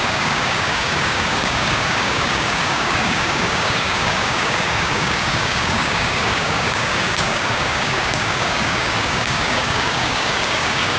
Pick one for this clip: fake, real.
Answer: fake